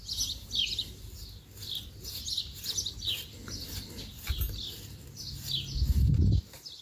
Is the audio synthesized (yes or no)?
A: no